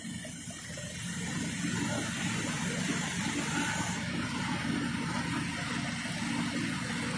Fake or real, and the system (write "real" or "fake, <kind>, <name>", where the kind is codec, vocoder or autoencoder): real